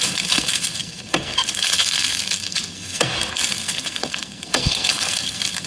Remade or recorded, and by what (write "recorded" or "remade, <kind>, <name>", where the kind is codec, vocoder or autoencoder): remade, codec, SNAC